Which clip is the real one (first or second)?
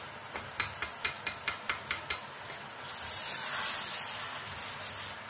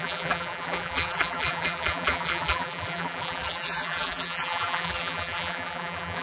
first